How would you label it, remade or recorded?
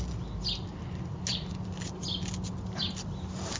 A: recorded